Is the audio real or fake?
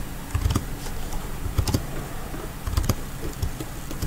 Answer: real